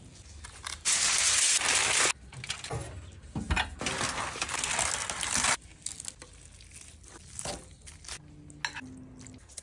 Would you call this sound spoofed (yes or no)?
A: no